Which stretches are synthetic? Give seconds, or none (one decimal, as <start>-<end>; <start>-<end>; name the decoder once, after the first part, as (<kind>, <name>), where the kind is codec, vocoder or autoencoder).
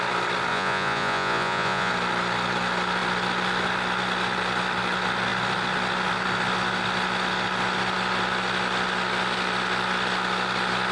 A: 0.5-1.9 (vocoder, Vocos)